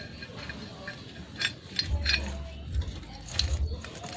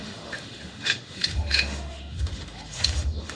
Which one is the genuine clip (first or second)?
first